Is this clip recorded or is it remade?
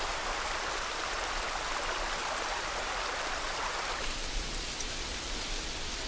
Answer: remade